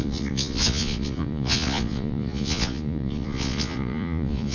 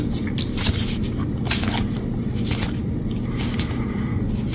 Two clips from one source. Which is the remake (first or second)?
first